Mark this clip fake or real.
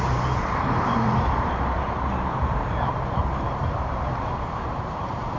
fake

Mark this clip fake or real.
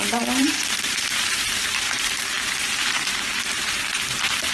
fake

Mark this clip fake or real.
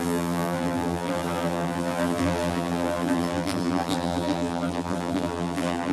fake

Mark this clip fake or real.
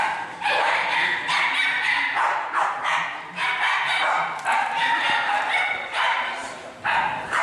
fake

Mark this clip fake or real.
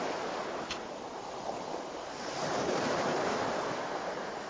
fake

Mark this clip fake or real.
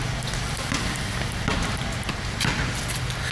real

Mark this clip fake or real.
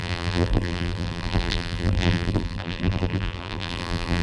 fake